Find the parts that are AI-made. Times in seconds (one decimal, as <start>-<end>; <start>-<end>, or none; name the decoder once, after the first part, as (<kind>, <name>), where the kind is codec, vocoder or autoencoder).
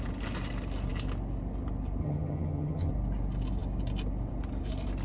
2.0-2.9 (vocoder, HiFi-GAN)